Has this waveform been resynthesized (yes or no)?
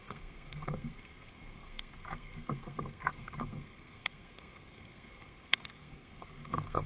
yes